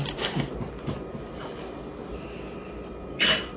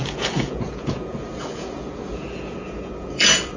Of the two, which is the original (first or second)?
first